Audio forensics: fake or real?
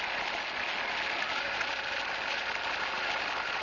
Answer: real